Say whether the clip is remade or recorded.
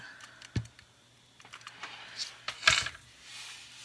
recorded